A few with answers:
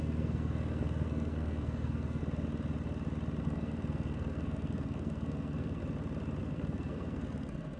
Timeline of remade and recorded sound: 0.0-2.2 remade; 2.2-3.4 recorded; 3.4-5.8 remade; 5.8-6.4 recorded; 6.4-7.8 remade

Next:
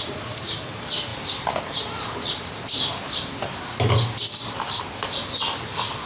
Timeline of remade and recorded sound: 0.0-6.1 recorded

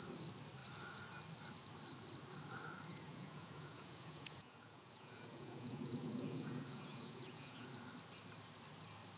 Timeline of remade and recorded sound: 0.0-2.9 recorded; 2.9-7.7 remade; 7.7-9.2 recorded

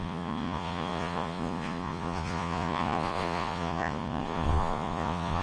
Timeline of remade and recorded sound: 0.0-5.4 remade

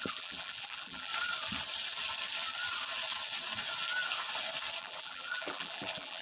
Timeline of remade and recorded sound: 0.0-1.1 remade; 1.1-4.8 recorded; 4.8-6.2 remade

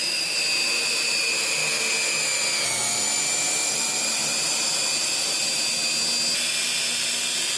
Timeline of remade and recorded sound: 0.0-1.6 remade; 1.6-3.7 recorded; 3.7-6.0 remade; 6.0-7.6 recorded